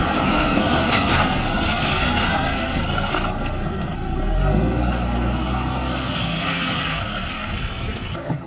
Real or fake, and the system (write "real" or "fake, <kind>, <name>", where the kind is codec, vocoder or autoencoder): fake, codec, SNAC